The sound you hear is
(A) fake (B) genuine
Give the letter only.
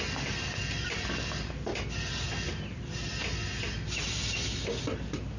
B